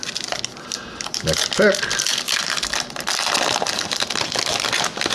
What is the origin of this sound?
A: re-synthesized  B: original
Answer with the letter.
B